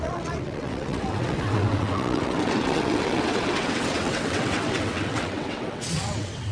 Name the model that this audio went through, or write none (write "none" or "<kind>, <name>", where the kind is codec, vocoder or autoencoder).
vocoder, WaveNeXt